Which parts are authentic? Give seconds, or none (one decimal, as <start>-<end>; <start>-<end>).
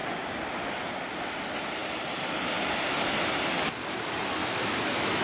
0.0-4.4